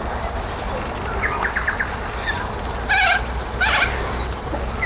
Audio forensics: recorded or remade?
recorded